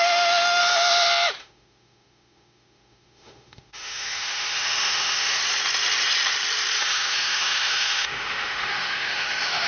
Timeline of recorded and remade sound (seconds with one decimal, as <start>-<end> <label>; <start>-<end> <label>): 0.0-0.6 remade; 0.6-1.4 recorded; 1.4-5.4 remade; 5.4-6.8 recorded; 6.8-9.7 remade